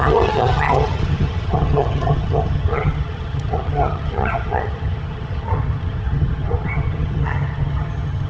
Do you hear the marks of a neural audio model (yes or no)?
yes